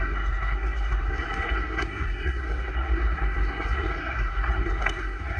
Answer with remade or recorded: remade